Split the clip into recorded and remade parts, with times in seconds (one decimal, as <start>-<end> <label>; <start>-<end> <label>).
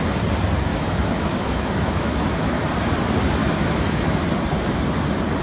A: 0.0-0.7 recorded; 0.7-2.6 remade; 2.6-3.4 recorded; 3.4-4.2 remade; 4.2-5.4 recorded